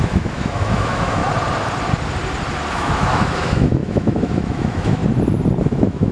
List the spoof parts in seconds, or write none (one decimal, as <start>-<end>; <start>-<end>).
0.0-1.2; 2.7-5.0; 5.6-6.1